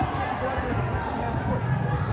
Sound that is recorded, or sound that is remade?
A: recorded